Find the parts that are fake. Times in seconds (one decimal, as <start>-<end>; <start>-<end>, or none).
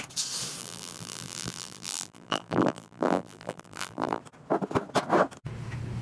0.6-4.2